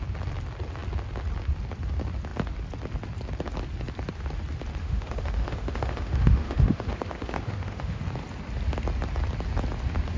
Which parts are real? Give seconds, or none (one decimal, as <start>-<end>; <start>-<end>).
0.0-4.8; 8.0-10.2